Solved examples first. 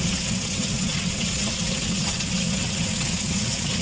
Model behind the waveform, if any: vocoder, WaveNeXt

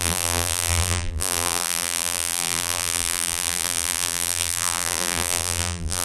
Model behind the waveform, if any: vocoder, BigVGAN v2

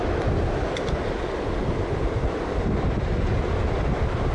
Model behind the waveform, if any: none